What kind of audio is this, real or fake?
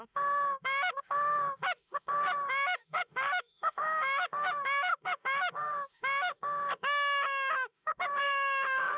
fake